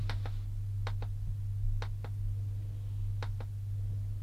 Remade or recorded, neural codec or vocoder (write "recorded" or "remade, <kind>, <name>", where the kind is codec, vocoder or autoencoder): recorded